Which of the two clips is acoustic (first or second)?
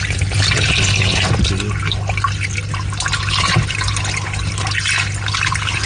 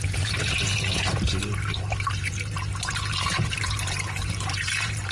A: first